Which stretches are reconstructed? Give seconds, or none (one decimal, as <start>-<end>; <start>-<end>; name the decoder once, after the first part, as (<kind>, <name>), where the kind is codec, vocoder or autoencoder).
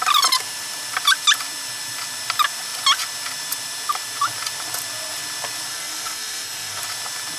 5.7-6.8 (codec, SNAC)